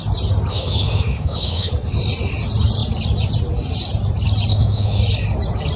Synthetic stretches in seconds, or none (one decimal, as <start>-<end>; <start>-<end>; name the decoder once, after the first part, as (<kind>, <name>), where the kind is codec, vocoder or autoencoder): 0.5-1.7 (autoencoder, DAC-VAE); 4.5-5.0